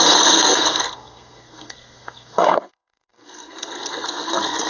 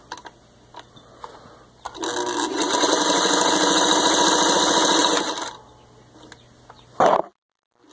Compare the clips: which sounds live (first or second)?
second